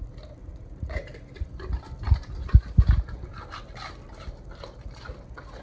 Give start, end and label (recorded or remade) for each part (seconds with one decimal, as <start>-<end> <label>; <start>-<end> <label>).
0.0-0.4 recorded; 0.4-1.1 remade; 1.1-5.6 recorded